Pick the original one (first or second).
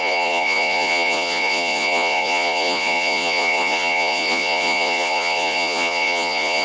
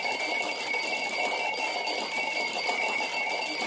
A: second